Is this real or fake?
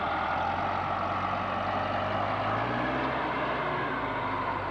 real